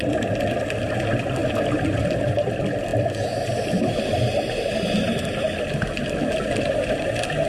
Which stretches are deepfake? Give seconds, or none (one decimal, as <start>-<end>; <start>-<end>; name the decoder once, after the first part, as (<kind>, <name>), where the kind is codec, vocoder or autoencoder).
none